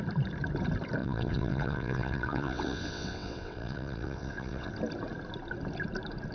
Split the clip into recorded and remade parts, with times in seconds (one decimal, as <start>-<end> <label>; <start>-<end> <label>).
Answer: 0.0-1.0 recorded; 1.0-4.7 remade; 4.7-6.3 recorded